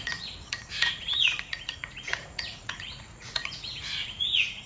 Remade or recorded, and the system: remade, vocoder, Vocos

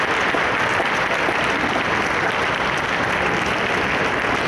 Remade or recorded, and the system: recorded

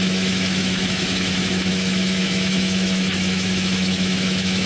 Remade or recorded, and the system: remade, autoencoder, DAC-VAE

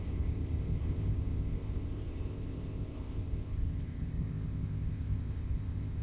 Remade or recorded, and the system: remade, codec, ZipCodec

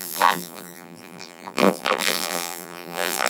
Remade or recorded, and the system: remade, vocoder, BigVGAN v2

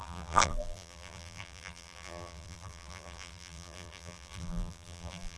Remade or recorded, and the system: remade, vocoder, BigVGAN v2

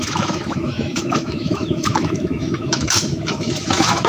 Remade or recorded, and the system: remade, autoencoder, DAC-VAE